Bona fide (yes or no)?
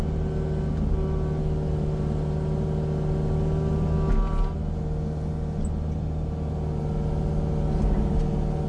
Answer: yes